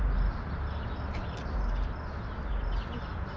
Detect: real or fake real